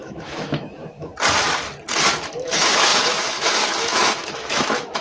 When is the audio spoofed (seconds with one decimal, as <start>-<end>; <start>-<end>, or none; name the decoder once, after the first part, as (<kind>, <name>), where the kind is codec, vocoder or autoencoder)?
0.0-1.1 (autoencoder, DAC-VAE); 2.3-5.0